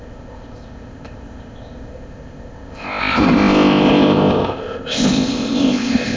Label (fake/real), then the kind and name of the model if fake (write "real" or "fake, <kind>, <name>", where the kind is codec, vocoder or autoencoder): fake, codec, ZipCodec